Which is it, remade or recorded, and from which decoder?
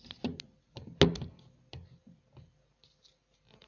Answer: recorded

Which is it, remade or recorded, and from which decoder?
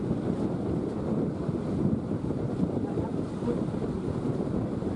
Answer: recorded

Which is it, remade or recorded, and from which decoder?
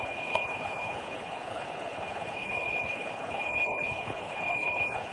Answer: remade, codec, HILCodec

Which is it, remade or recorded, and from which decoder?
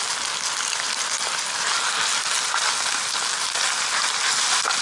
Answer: recorded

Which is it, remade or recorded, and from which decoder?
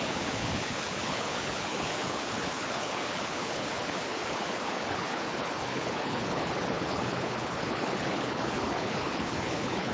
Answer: remade, codec, HILCodec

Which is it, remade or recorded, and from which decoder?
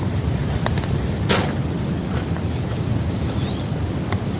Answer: recorded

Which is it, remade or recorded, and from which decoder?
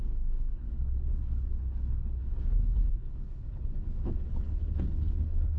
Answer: remade, codec, HILCodec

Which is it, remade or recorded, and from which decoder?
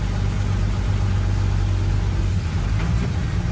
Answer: recorded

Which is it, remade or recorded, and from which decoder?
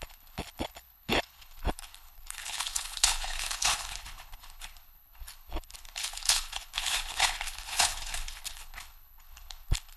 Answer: remade, codec, HILCodec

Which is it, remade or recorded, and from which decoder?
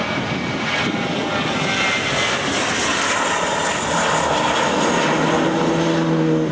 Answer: recorded